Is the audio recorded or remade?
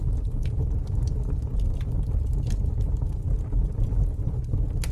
recorded